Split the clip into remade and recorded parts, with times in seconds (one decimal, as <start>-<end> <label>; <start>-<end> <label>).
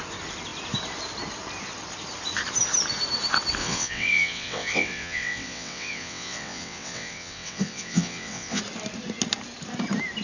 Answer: 0.0-3.6 recorded; 3.6-8.6 remade; 8.6-10.2 recorded